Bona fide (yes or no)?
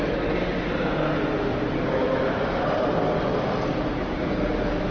yes